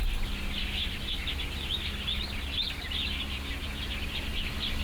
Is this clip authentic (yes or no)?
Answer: yes